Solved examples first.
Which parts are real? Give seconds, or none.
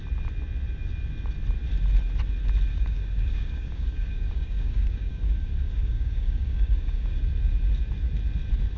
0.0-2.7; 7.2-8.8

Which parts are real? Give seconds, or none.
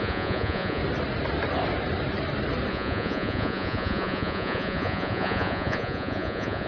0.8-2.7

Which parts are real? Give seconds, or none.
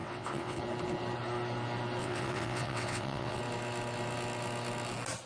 0.6-2.0; 3.4-5.3